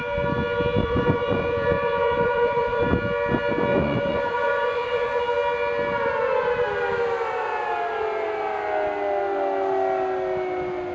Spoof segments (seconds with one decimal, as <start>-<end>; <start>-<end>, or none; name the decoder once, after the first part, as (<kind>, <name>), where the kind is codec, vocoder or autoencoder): 0.8-2.8 (vocoder, Vocos); 3.7-5.2